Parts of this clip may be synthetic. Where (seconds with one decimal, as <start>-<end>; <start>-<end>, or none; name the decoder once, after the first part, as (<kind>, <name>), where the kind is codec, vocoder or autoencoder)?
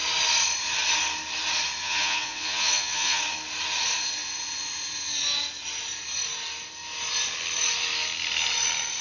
1.8-3.2 (vocoder, Vocos)